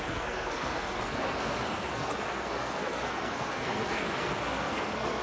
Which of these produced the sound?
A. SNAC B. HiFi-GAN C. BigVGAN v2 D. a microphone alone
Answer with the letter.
A